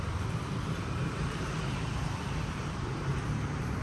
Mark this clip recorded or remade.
remade